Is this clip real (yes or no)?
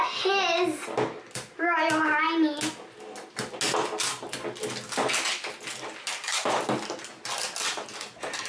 yes